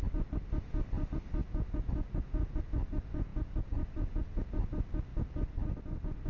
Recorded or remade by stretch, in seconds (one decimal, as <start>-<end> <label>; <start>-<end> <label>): 0.0-1.4 recorded; 1.4-2.6 remade; 2.6-3.3 recorded; 3.3-4.5 remade; 4.5-6.3 recorded

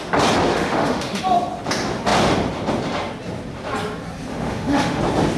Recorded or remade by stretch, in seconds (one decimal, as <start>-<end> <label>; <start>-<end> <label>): 0.0-0.5 recorded; 0.5-1.2 remade; 1.2-4.3 recorded; 4.3-5.0 remade; 5.0-5.4 recorded

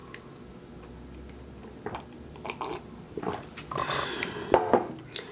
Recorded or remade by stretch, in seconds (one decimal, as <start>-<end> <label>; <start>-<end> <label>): 0.0-5.3 recorded

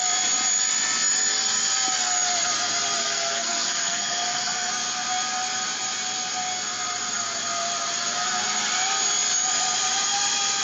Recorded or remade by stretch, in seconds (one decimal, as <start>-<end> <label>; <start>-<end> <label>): 0.0-3.0 recorded; 3.0-4.7 remade; 4.7-10.6 recorded

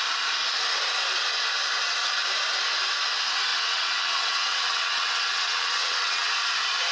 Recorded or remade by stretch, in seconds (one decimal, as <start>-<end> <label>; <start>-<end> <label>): 0.0-3.5 recorded; 3.5-6.3 remade; 6.3-6.9 recorded

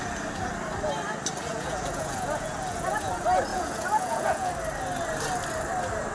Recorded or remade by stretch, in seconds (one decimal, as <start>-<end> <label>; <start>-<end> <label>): 0.0-1.5 recorded; 1.5-3.1 remade; 3.1-3.5 recorded; 3.5-4.5 remade; 4.5-6.1 recorded

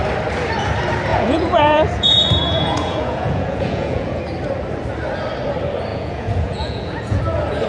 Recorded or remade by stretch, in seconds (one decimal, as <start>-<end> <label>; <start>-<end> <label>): 0.0-1.1 recorded; 1.1-4.2 remade; 4.2-5.9 recorded; 5.9-7.2 remade; 7.2-7.7 recorded

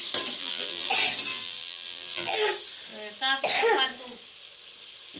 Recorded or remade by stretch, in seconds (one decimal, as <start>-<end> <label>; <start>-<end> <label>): 0.0-0.4 recorded; 0.4-0.9 remade; 0.9-1.3 recorded; 1.3-2.4 remade; 2.4-5.2 recorded